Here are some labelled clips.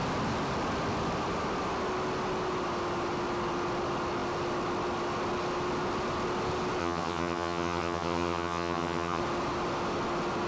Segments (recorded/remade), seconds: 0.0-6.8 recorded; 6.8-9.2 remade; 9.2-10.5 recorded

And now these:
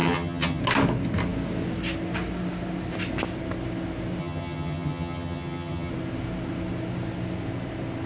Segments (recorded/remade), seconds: 0.0-0.6 remade; 0.6-4.2 recorded; 4.2-5.9 remade; 5.9-8.1 recorded

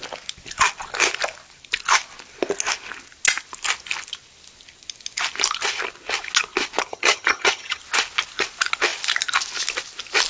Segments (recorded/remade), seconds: 0.0-6.9 recorded; 6.9-7.8 remade; 7.8-10.3 recorded

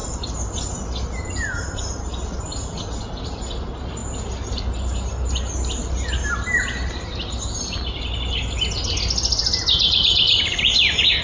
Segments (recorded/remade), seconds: 0.0-11.2 recorded

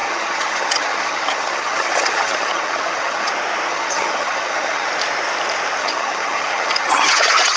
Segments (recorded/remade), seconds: 0.0-3.3 remade; 3.3-3.7 recorded; 3.7-4.9 remade; 4.9-5.8 recorded; 5.8-7.6 remade

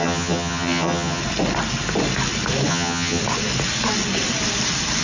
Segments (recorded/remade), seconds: 0.0-1.2 remade; 1.2-2.7 recorded; 2.7-3.2 remade; 3.2-5.0 recorded